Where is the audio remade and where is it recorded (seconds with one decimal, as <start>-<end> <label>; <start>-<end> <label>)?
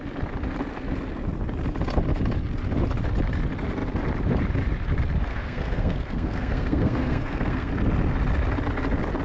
0.0-5.3 recorded; 5.3-7.7 remade; 7.7-9.2 recorded